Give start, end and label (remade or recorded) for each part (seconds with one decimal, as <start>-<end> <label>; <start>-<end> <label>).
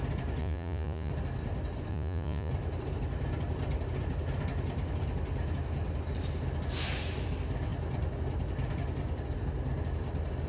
0.0-0.4 recorded; 0.4-1.1 remade; 1.1-1.9 recorded; 1.9-2.5 remade; 2.5-10.5 recorded